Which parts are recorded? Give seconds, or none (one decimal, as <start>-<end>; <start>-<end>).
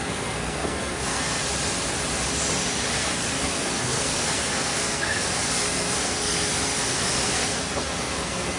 1.4-2.9